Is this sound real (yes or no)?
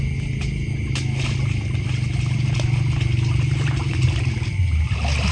yes